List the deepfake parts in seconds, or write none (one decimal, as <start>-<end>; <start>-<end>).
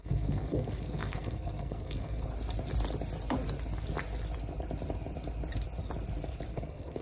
0.0-2.3; 6.5-7.0